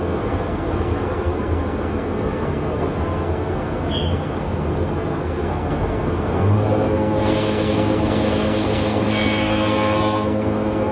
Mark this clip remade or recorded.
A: remade